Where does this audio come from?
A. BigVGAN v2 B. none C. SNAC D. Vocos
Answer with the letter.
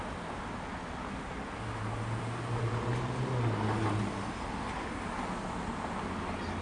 B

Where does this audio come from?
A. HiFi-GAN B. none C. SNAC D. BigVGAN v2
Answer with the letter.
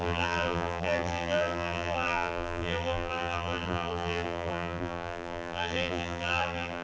D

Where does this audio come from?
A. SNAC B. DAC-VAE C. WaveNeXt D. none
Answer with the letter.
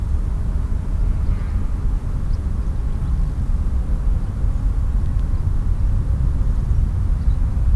D